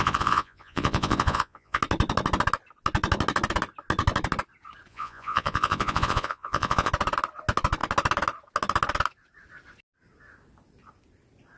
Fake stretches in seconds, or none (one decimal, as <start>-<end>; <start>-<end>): 0.0-1.8; 4.9-6.9